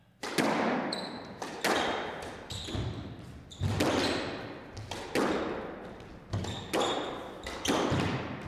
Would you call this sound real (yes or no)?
yes